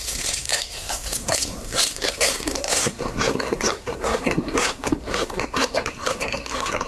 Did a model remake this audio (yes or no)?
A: yes